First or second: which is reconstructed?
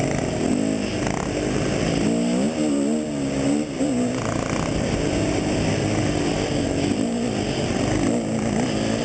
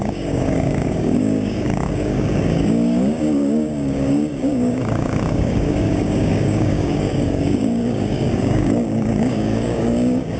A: second